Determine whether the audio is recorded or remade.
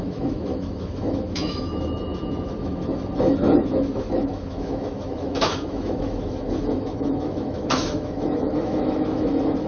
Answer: remade